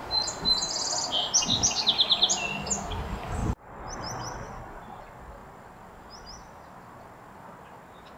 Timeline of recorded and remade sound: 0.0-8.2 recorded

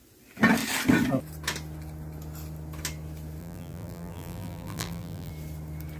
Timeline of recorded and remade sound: 0.0-3.4 recorded; 3.4-5.3 remade; 5.3-6.0 recorded

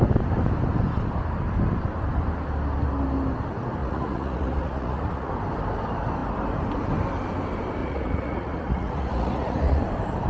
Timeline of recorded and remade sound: 0.0-3.8 recorded; 3.8-5.3 remade; 5.3-7.8 recorded; 7.8-9.8 remade; 9.8-10.3 recorded

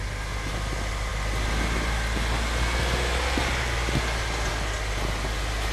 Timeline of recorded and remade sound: 0.0-5.7 recorded

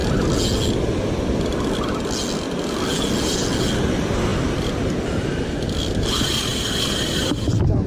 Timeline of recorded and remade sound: 0.0-7.9 recorded

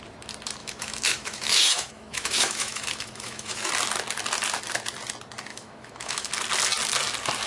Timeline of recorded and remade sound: 0.0-0.6 recorded; 0.6-3.7 remade; 3.7-5.5 recorded; 5.5-6.3 remade; 6.3-7.5 recorded